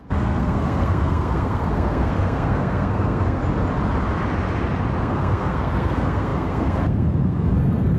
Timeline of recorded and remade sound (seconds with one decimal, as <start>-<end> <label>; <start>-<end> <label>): 0.0-3.4 remade; 3.4-5.0 recorded; 5.0-8.0 remade